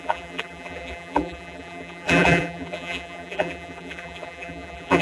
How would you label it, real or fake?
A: fake